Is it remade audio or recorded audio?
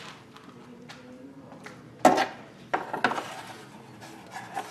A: recorded